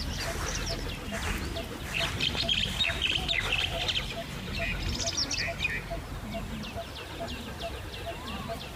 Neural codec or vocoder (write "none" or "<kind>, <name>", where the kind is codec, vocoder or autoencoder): none